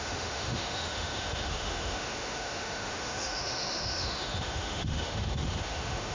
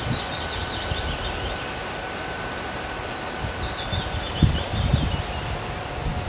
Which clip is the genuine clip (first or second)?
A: second